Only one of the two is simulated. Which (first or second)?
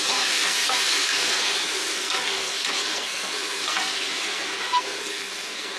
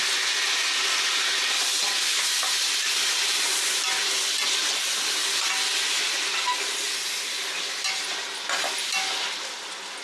first